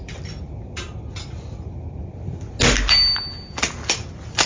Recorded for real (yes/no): yes